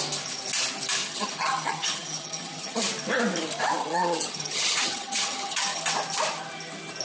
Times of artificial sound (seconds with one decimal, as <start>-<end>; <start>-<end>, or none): 1.0-2.8; 3.8-5.8